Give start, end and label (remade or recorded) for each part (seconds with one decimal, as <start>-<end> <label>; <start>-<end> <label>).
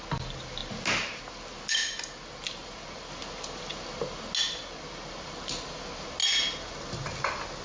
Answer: 0.0-7.6 recorded